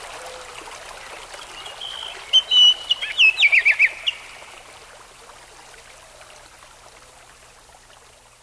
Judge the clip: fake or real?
real